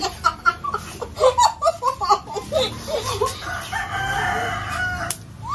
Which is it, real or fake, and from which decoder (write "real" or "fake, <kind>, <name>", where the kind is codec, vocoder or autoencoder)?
real